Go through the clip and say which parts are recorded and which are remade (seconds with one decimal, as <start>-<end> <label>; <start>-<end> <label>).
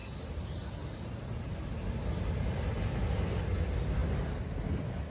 0.0-5.1 recorded